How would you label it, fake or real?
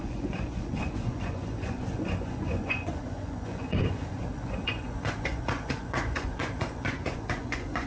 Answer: fake